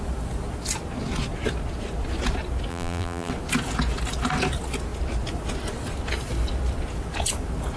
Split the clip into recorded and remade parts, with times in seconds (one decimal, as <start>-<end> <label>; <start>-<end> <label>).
0.0-2.7 recorded; 2.7-3.3 remade; 3.3-7.8 recorded

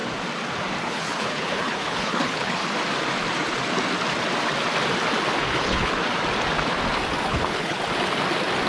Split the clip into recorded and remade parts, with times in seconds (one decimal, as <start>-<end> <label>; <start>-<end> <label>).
0.0-0.8 recorded; 0.8-2.6 remade; 2.6-5.4 recorded; 5.4-6.0 remade; 6.0-7.2 recorded; 7.2-7.8 remade; 7.8-8.7 recorded

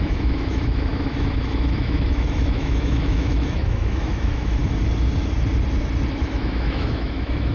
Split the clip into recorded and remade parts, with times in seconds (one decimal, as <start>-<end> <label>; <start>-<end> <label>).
0.0-4.6 remade; 4.6-6.1 recorded; 6.1-7.5 remade